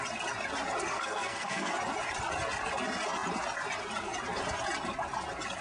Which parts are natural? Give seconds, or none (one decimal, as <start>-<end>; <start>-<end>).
0.0-0.9; 1.7-5.6